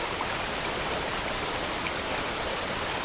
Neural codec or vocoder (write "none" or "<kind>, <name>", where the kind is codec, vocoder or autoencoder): none